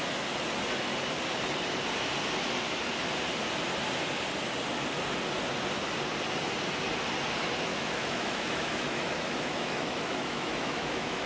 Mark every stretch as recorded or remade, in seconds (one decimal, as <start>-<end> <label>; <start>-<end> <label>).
0.0-7.7 recorded; 7.7-11.3 remade